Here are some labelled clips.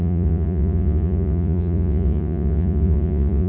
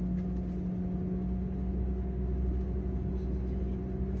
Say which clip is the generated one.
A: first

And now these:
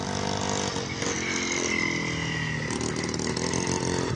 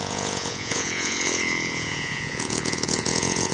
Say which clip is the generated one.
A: second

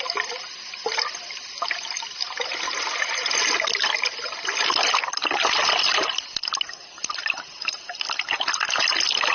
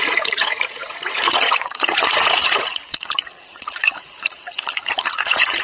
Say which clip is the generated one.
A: second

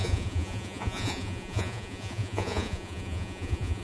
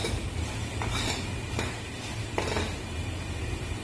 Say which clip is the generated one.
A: first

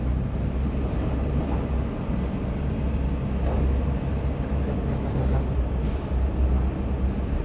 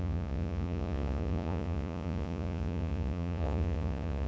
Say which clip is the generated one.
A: second